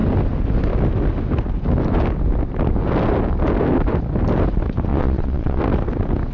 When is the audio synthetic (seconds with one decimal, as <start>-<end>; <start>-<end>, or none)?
4.9-5.6